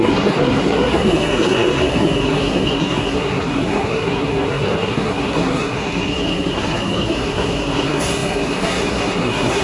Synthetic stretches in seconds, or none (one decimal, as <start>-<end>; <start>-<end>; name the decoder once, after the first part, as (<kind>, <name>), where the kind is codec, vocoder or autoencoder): 0.0-9.6 (codec, SNAC)